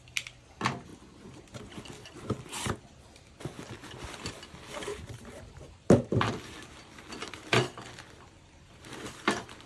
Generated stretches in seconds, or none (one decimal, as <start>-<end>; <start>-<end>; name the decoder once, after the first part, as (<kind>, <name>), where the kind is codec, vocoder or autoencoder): 4.9-6.3 (vocoder, BigVGAN v2)